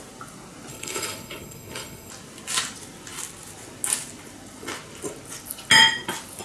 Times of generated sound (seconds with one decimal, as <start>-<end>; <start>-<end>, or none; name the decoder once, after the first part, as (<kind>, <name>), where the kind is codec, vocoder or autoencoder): 0.7-2.1 (codec, HILCodec)